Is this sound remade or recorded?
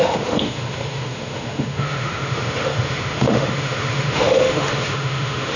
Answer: remade